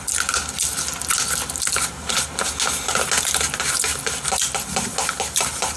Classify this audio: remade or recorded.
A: recorded